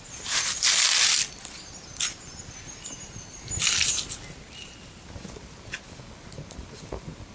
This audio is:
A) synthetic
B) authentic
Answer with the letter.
B